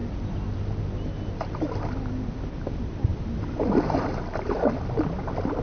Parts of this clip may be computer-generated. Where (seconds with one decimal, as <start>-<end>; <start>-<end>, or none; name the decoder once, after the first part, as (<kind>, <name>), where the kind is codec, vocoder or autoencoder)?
3.1-3.6 (vocoder, BigVGAN v2)